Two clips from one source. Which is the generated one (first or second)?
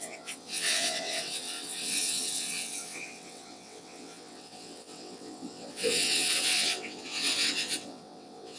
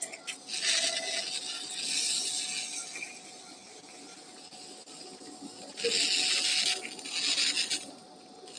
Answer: first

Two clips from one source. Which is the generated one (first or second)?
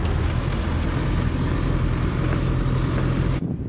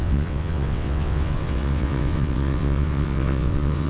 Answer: second